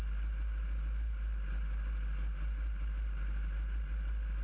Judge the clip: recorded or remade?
recorded